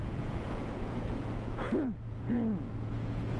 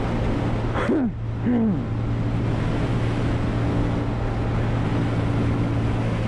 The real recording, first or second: second